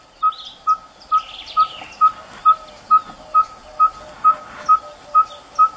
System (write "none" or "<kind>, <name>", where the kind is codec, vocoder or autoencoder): none